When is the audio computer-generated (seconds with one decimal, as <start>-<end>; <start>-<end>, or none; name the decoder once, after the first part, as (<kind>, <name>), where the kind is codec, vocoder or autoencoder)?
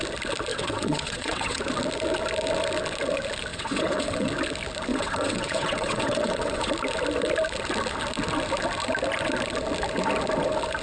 0.5-1.6 (vocoder, WaveNeXt); 3.5-4.3; 4.9-6.7